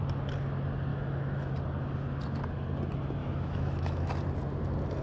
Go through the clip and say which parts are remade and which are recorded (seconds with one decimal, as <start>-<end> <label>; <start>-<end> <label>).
0.0-0.9 recorded; 0.9-1.5 remade; 1.5-3.2 recorded; 3.2-4.1 remade; 4.1-5.0 recorded